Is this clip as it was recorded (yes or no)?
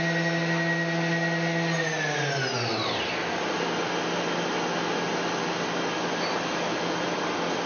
yes